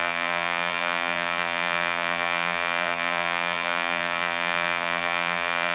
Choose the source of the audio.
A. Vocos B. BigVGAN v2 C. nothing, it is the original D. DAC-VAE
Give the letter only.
B